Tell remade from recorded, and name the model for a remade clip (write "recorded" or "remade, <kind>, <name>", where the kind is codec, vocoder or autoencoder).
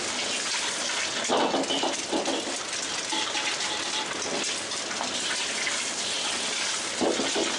recorded